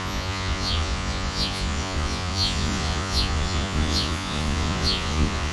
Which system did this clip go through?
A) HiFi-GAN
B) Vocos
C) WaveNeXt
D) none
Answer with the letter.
B